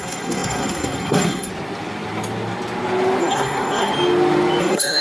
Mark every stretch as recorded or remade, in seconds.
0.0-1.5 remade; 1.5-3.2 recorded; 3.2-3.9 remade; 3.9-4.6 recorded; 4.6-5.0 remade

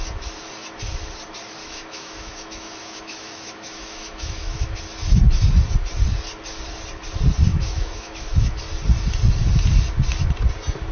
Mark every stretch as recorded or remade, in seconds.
0.0-1.6 recorded; 1.6-4.8 remade; 4.8-7.5 recorded; 7.5-8.6 remade; 8.6-10.9 recorded

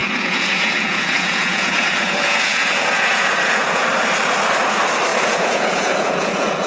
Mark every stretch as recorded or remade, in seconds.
0.0-3.8 remade; 3.8-5.1 recorded; 5.1-6.7 remade

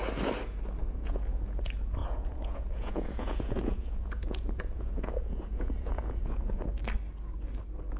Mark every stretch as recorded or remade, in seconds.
0.0-0.8 recorded; 0.8-1.6 remade; 1.6-2.0 recorded; 2.0-6.7 remade; 6.7-8.0 recorded

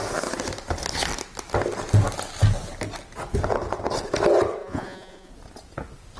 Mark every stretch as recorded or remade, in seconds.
0.0-4.6 recorded; 4.6-5.3 remade; 5.3-6.2 recorded

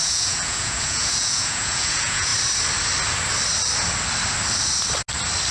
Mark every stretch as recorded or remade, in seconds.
0.0-2.3 remade; 2.3-5.5 recorded

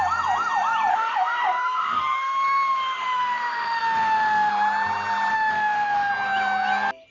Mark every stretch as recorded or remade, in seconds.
0.0-0.9 recorded; 0.9-4.5 remade; 4.5-5.3 recorded; 5.3-6.1 remade; 6.1-7.1 recorded

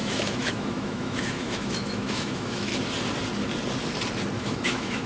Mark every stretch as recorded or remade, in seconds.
0.0-2.7 remade; 2.7-4.4 recorded; 4.4-5.1 remade